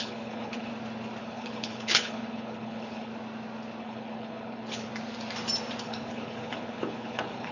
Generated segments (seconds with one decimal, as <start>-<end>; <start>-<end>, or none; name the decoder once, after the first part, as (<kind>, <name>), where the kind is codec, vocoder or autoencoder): 0.0-0.7 (codec, HILCodec); 1.2-3.1; 3.8-4.9; 5.8-7.5